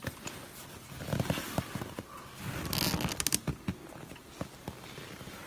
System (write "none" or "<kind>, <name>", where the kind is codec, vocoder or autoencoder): none